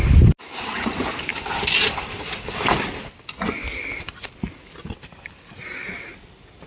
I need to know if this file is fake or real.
real